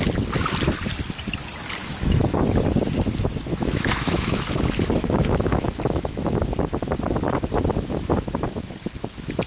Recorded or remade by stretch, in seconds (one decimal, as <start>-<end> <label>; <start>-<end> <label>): 0.0-1.8 recorded; 1.8-2.4 remade; 2.4-3.5 recorded; 3.5-4.4 remade; 4.4-5.0 recorded; 5.0-6.4 remade; 6.4-9.5 recorded